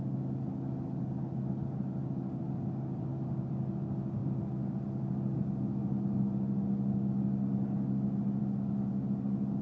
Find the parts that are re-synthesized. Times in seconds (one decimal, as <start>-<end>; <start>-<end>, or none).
none